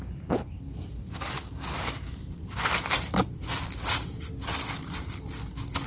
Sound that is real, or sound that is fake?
real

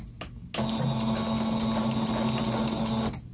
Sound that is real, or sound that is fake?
real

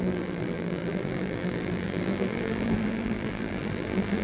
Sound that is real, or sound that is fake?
fake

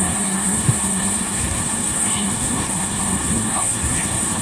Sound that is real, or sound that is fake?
fake